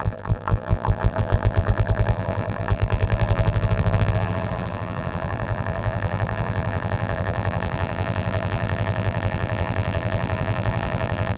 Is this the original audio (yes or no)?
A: no